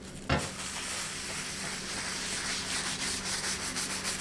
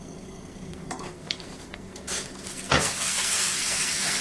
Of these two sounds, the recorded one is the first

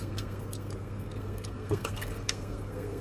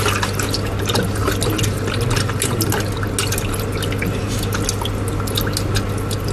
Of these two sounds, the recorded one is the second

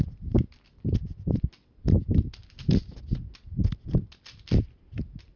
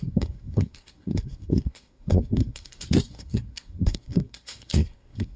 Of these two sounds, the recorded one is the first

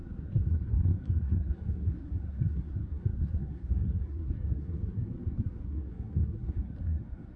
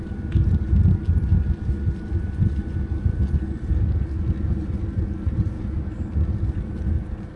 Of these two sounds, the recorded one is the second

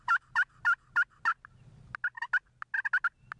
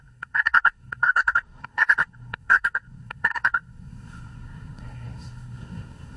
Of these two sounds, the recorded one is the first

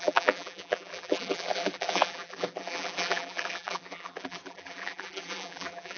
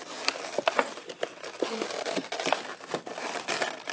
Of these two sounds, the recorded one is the second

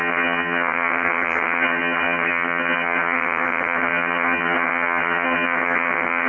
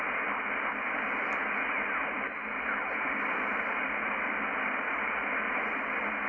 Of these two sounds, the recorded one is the second